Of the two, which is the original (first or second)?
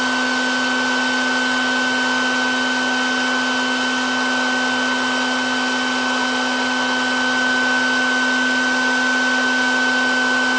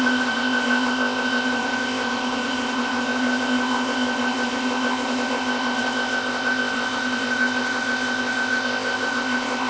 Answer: first